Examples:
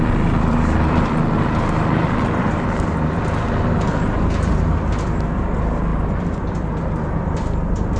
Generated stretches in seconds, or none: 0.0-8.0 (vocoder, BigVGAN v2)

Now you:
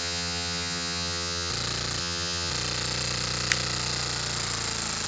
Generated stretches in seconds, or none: 0.0-1.5 (vocoder, HiFi-GAN); 2.0-2.5

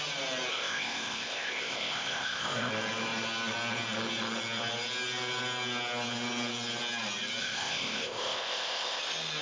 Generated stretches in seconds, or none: 0.5-2.7 (codec, ZipCodec); 7.4-9.0

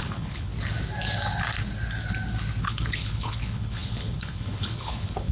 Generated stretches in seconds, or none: 0.0-0.5 (codec, HILCodec); 2.6-5.3

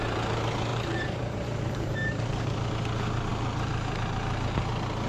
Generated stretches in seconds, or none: 0.7-2.7 (vocoder, BigVGAN v2)

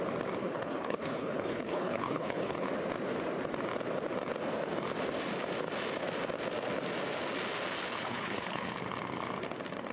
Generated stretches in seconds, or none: 0.4-2.7 (codec, HILCodec); 8.0-8.7

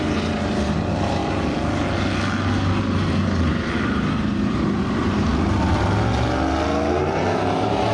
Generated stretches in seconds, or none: 0.0-1.2 (vocoder, BigVGAN v2); 2.8-5.3; 7.0-7.9